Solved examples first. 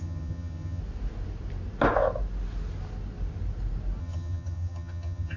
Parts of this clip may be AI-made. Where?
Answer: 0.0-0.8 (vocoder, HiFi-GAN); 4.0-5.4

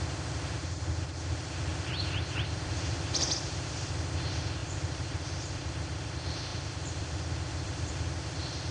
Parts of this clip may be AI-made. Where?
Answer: 1.7-3.9 (vocoder, BigVGAN v2); 4.6-5.7; 6.5-7.9

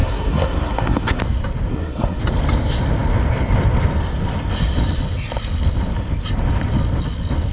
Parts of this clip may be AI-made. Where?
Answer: 0.0-1.2 (codec, SNAC); 1.7-2.2

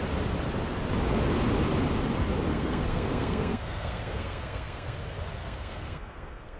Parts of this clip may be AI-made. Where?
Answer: 2.5-5.0 (codec, SNAC); 5.4-6.6

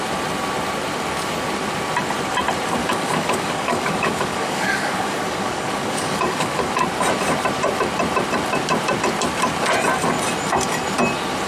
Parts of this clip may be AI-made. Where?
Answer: 2.8-6.7 (codec, DAC)

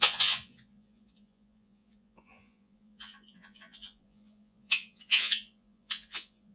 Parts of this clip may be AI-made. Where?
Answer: 0.0-6.5 (vocoder, Vocos)